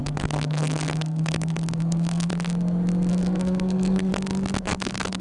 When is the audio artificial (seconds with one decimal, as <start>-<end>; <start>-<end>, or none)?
0.0-2.3; 3.1-4.1; 4.6-5.2